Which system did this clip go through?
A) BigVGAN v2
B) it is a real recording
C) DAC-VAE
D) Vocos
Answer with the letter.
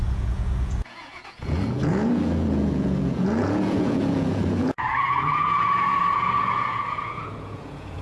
D